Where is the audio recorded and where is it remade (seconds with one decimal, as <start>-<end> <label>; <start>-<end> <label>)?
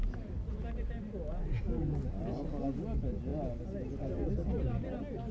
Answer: 0.0-5.3 recorded